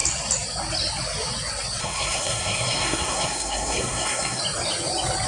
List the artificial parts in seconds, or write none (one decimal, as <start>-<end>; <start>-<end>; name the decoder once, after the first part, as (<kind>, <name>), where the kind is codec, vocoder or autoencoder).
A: 1.8-4.4 (codec, SNAC)